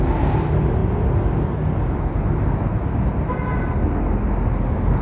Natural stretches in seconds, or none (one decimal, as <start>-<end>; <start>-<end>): 0.0-5.0